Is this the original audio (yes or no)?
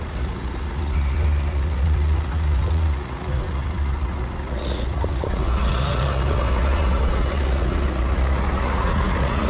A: no